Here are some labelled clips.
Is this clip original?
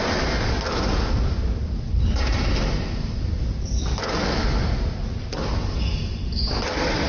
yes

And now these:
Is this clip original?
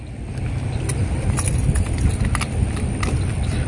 yes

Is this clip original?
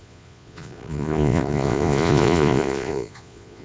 no